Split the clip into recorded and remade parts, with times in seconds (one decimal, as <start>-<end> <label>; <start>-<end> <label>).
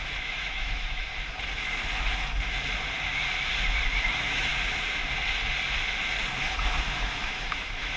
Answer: 0.0-1.1 remade; 1.1-4.0 recorded; 4.0-4.5 remade; 4.5-6.8 recorded; 6.8-8.0 remade